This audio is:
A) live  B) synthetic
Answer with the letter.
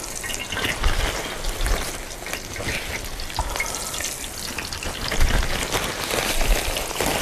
A